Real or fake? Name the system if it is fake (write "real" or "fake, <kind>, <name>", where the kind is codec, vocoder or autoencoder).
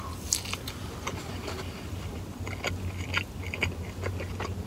real